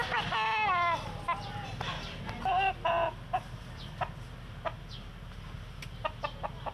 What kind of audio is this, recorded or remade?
recorded